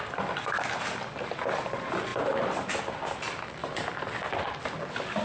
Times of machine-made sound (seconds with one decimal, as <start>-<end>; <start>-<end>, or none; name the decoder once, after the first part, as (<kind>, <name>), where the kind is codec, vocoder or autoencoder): none